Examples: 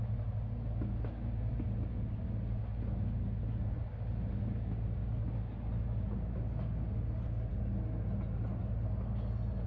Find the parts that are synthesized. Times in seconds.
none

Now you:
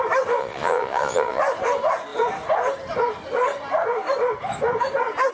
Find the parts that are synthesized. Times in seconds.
0.4-1.4 (vocoder, Vocos)

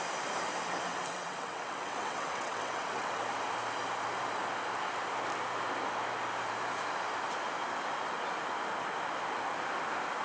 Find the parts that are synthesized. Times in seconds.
0.9-3.2 (vocoder, WaveNeXt)

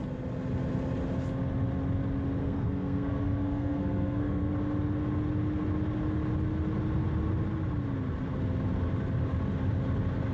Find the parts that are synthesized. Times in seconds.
2.4-4.5 (codec, SNAC)

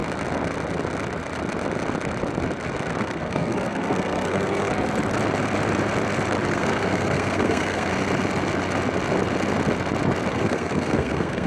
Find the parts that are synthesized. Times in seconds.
3.0-4.7 (codec, SNAC); 6.5-7.9; 10.3-11.5

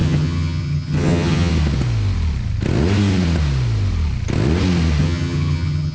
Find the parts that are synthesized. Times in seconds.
0.0-1.5 (vocoder, HiFi-GAN); 5.0-5.9

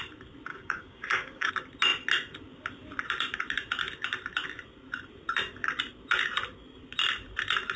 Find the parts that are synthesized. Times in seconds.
0.5-1.5 (codec, DAC)

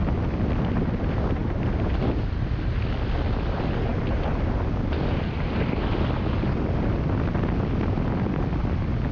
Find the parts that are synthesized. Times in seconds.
none